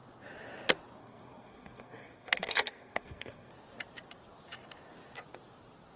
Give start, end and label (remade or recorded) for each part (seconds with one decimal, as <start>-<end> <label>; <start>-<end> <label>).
0.0-1.0 recorded; 1.0-3.5 remade; 3.5-6.0 recorded